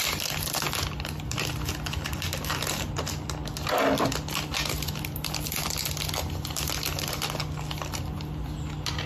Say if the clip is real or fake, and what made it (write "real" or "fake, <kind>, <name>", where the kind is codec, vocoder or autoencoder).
real